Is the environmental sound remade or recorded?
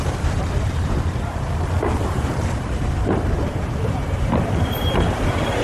remade